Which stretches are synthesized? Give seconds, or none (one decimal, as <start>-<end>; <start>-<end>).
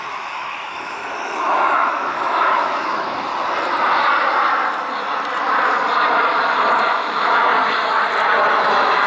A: 0.0-3.3; 6.9-7.5; 8.5-9.1